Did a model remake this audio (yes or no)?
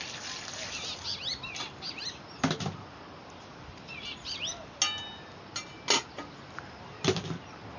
no